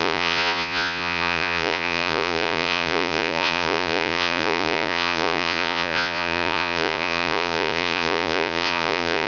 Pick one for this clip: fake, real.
fake